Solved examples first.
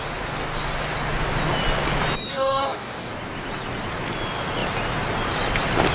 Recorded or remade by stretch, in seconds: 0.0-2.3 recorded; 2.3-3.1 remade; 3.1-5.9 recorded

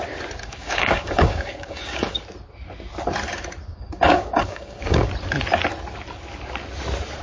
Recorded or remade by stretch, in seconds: 0.0-0.4 recorded; 0.4-2.2 remade; 2.2-3.7 recorded; 3.7-5.1 remade; 5.1-7.2 recorded

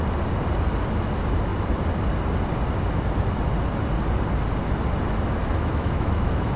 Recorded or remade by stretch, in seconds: 0.0-5.4 recorded; 5.4-6.6 remade